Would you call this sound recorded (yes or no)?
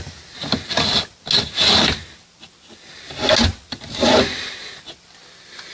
yes